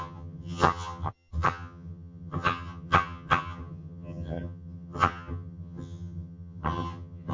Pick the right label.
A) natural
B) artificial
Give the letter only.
B